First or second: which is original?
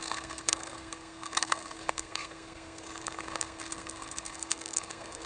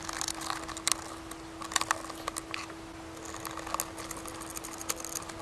second